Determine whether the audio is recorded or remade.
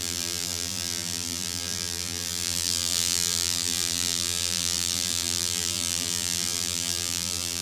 remade